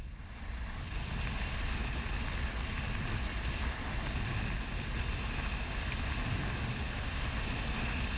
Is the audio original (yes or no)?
yes